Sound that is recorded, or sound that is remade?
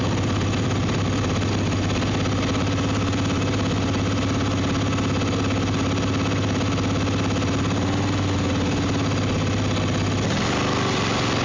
recorded